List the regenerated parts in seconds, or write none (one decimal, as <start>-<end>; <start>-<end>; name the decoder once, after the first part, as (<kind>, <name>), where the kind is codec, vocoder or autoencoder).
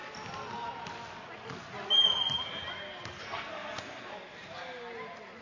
3.2-4.1 (codec, SNAC)